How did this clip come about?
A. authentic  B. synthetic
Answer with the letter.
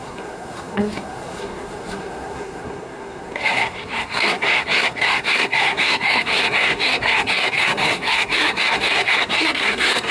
B